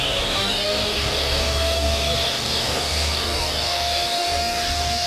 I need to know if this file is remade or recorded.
remade